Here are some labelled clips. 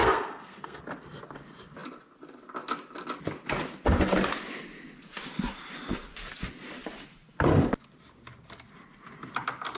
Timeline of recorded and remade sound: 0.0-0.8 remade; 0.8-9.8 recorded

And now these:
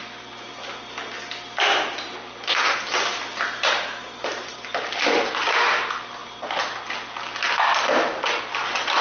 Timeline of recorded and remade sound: 0.0-9.0 recorded

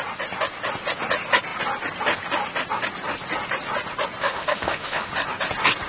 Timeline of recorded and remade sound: 0.0-4.2 recorded; 4.2-5.1 remade; 5.1-5.9 recorded

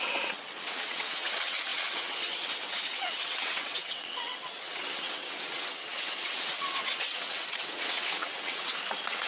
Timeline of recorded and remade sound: 0.0-9.3 remade

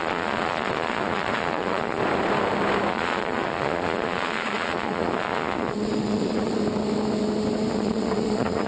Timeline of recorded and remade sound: 0.0-2.0 remade; 2.0-2.9 recorded; 2.9-6.6 remade; 6.6-7.7 recorded; 7.7-8.7 remade